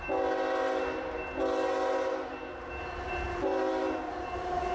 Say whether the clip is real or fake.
real